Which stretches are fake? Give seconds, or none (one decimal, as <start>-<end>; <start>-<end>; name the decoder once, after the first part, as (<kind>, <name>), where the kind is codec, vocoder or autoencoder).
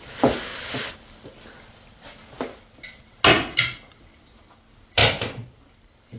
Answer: none